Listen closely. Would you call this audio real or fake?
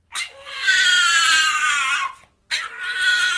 real